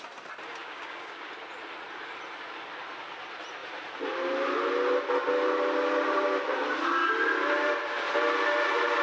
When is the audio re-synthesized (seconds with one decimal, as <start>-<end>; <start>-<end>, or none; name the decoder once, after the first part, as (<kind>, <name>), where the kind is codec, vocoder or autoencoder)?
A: 0.6-1.3 (codec, DAC)